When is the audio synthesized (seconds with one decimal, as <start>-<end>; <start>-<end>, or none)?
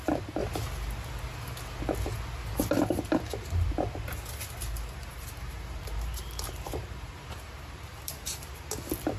5.1-8.6